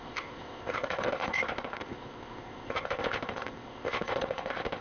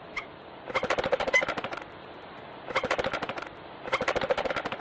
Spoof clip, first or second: first